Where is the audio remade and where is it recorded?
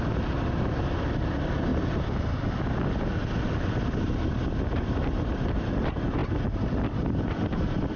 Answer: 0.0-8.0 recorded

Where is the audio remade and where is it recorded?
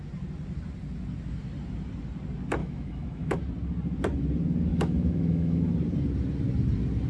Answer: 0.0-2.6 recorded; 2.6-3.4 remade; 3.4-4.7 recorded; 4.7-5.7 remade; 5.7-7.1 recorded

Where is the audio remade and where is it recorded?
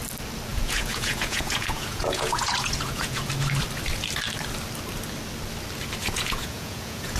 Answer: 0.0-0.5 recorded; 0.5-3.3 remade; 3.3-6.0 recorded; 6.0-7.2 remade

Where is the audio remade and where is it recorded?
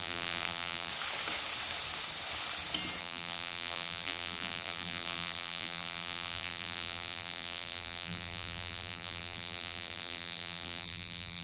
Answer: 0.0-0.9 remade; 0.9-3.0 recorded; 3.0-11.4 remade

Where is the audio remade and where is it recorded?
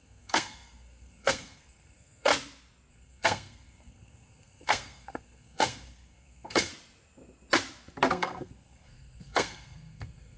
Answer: 0.0-2.3 remade; 2.3-2.9 recorded; 2.9-6.7 remade; 6.7-8.1 recorded; 8.1-10.4 remade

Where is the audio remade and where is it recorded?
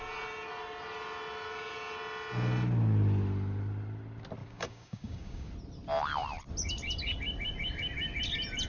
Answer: 0.0-4.4 recorded; 4.4-5.5 remade; 5.5-8.7 recorded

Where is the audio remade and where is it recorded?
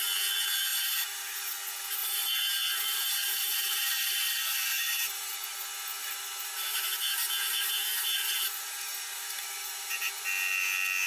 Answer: 0.0-0.7 recorded; 0.7-1.5 remade; 1.5-2.0 recorded; 2.0-5.3 remade; 5.3-6.0 recorded; 6.0-10.1 remade; 10.1-11.1 recorded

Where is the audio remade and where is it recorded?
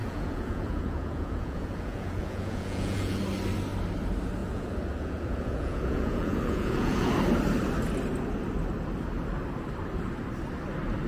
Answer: 0.0-3.2 remade; 3.2-4.4 recorded; 4.4-7.1 remade; 7.1-11.1 recorded